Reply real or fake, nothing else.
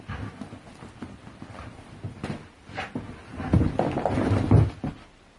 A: real